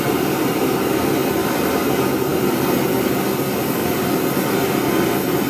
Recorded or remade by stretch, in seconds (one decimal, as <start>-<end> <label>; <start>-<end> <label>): 0.0-1.4 recorded; 1.4-1.9 remade; 1.9-3.8 recorded; 3.8-4.9 remade; 4.9-5.5 recorded